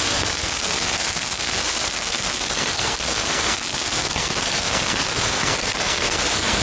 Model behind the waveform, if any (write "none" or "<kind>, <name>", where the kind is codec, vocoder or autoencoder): codec, SNAC